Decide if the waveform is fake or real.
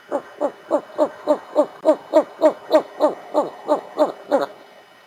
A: fake